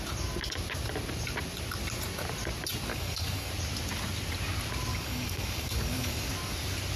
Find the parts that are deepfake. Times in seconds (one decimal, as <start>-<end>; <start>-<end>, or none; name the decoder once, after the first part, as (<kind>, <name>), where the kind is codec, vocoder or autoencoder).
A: 2.9-3.5 (codec, DAC); 4.9-6.3